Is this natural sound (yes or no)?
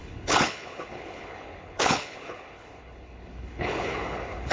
no